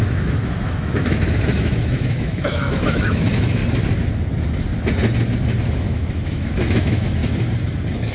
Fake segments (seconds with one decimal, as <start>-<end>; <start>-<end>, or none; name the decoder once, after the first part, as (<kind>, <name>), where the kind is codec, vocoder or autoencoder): 0.0-3.6 (autoencoder, DAC-VAE); 5.7-7.2